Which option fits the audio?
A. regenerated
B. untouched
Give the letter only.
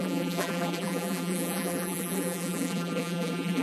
A